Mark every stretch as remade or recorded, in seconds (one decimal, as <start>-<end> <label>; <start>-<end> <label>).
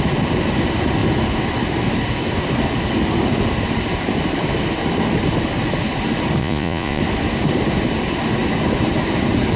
0.0-6.4 recorded; 6.4-7.0 remade; 7.0-9.6 recorded